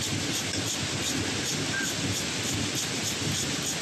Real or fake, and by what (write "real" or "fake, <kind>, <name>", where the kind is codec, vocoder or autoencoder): real